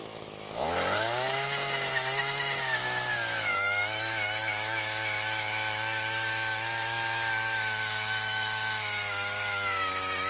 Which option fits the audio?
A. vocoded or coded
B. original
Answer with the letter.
A